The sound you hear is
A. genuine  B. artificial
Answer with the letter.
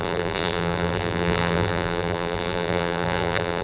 B